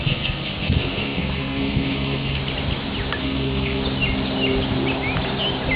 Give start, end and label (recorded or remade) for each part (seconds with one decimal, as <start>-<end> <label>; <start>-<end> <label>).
0.0-2.4 remade; 2.4-3.2 recorded; 3.2-3.8 remade; 3.8-5.8 recorded